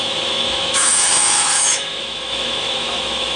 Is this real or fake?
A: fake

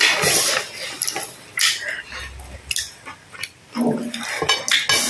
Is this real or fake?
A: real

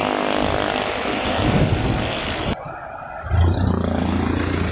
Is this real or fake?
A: real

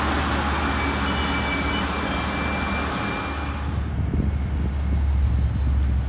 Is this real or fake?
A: real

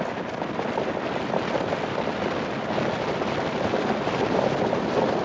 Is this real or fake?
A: real